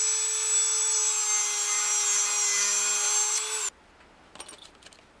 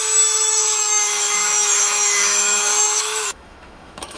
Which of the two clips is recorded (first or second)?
first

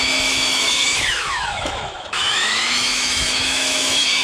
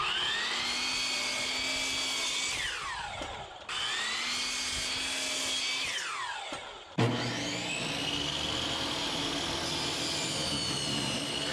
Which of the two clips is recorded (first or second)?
second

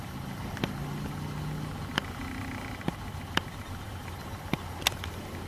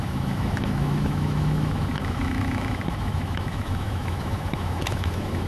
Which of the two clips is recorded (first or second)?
first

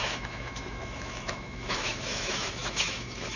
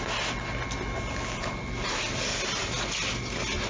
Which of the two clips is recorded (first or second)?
second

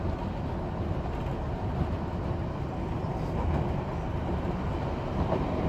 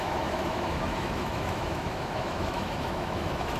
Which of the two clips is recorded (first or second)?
first